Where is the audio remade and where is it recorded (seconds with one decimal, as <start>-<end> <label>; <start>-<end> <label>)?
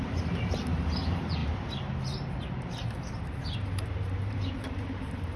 0.0-5.4 remade